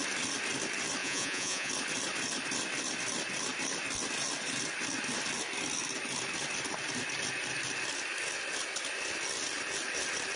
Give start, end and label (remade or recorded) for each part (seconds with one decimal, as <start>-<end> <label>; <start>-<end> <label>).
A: 0.0-1.0 recorded; 1.0-1.7 remade; 1.7-10.4 recorded